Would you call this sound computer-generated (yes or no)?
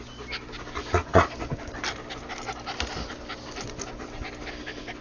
no